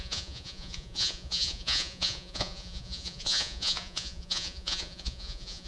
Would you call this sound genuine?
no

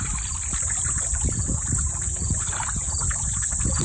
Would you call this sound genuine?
yes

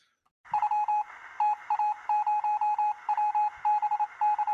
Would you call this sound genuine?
yes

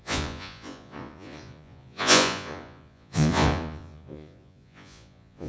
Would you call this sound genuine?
no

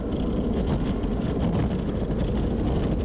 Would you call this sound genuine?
yes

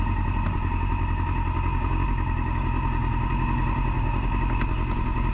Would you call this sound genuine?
yes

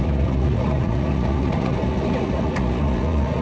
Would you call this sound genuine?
no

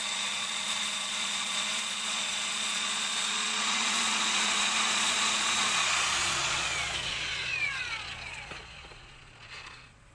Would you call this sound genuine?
no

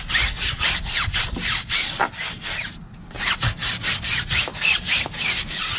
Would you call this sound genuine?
yes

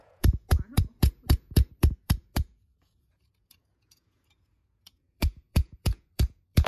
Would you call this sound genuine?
no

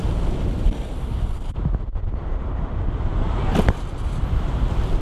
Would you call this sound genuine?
yes